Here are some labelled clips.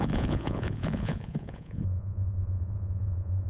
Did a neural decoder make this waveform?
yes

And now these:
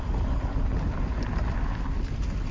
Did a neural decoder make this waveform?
no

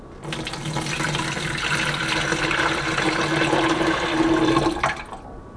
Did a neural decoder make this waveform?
no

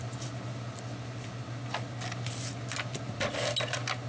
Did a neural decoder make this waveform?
no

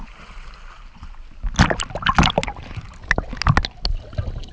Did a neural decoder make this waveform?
no